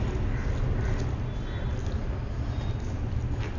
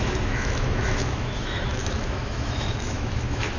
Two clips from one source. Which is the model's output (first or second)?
second